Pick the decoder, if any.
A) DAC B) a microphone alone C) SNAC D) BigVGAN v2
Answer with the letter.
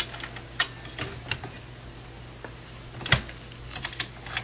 B